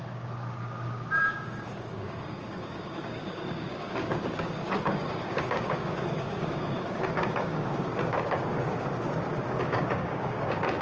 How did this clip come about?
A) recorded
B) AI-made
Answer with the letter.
B